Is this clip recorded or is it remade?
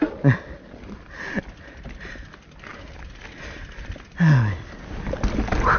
recorded